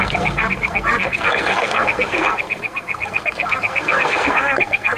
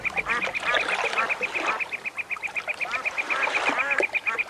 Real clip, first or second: second